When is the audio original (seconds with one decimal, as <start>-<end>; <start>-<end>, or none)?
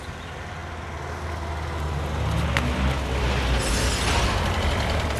0.0-5.2